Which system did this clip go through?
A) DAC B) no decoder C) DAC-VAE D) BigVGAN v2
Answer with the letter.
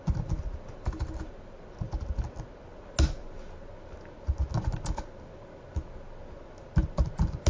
B